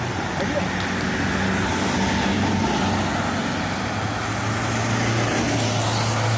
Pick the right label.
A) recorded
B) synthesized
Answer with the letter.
A